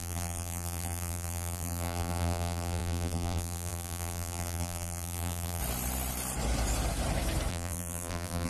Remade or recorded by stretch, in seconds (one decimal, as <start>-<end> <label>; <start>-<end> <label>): 0.0-5.6 remade; 5.6-7.5 recorded; 7.5-8.5 remade